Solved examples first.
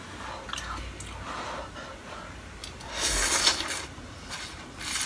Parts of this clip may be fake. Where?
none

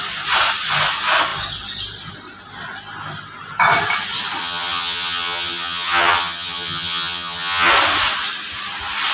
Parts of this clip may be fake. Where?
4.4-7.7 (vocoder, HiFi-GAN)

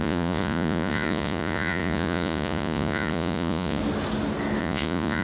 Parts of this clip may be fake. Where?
0.0-3.8 (vocoder, Vocos); 4.6-5.2

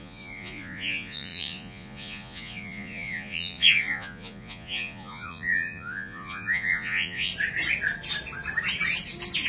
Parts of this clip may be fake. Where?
0.0-7.3 (vocoder, Vocos)

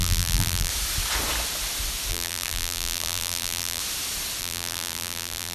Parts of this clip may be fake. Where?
0.0-0.7 (vocoder, BigVGAN v2); 2.1-3.8; 4.4-5.5